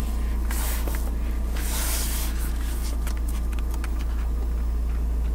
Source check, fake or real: real